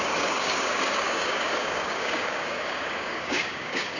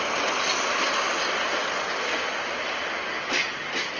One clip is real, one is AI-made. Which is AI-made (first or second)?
first